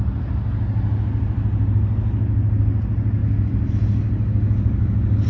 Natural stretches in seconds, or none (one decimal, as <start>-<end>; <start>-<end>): 0.0-5.3